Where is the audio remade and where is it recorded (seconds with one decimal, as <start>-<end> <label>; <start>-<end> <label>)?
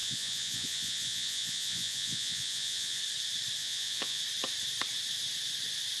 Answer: 0.0-3.0 remade; 3.0-3.6 recorded; 3.6-4.2 remade; 4.2-6.0 recorded